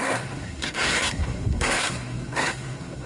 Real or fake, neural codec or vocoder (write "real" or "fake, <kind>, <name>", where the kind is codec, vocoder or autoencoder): fake, codec, SNAC